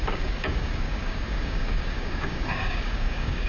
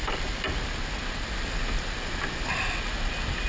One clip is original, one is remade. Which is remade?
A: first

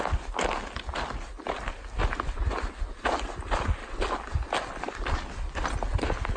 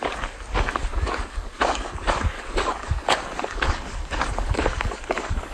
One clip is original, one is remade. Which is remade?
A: second